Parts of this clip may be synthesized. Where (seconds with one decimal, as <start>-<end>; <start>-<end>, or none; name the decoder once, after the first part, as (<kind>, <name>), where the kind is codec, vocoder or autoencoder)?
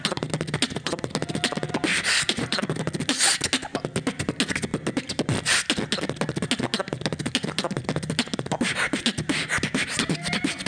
1.9-2.8 (vocoder, BigVGAN v2)